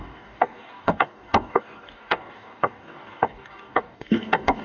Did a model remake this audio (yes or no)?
yes